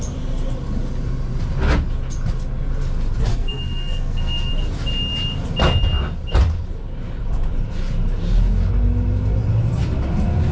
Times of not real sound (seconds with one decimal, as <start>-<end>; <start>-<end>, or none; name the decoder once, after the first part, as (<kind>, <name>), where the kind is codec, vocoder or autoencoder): 3.3-4.5 (codec, SNAC)